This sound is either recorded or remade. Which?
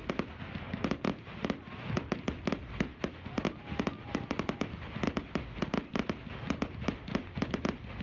recorded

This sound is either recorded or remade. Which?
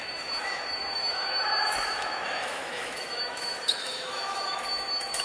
remade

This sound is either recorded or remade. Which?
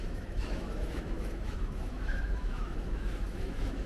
remade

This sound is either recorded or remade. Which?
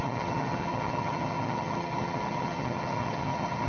remade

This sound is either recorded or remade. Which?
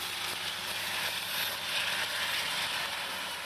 recorded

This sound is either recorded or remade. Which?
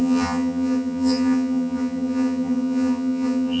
remade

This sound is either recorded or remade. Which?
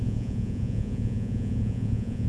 remade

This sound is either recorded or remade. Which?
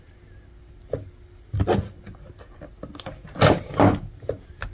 recorded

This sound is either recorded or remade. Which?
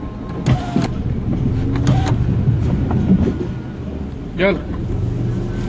recorded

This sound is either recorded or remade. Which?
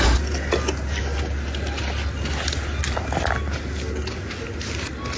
recorded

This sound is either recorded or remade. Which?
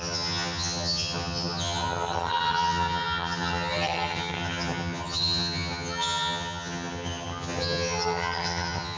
remade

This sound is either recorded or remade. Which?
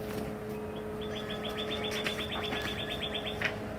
recorded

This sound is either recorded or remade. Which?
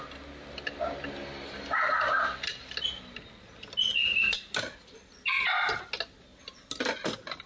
recorded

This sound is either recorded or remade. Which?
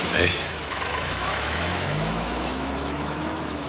remade